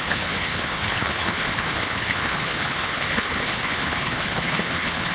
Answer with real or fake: fake